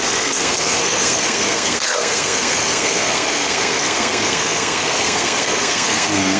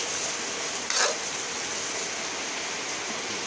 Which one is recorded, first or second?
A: second